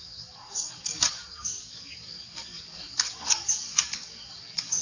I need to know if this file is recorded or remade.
remade